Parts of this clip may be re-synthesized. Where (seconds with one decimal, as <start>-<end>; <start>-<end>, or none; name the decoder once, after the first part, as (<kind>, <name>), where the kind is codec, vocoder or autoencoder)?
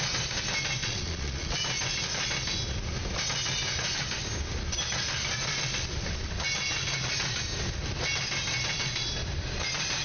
0.8-1.6 (vocoder, Vocos)